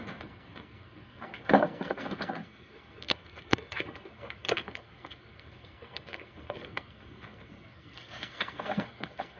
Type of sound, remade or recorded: remade